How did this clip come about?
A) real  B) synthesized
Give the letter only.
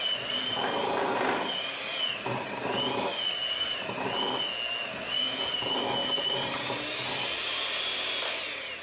A